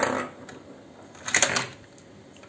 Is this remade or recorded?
recorded